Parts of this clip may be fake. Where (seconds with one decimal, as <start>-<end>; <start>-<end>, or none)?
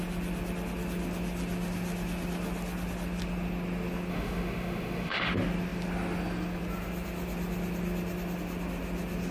4.1-5.3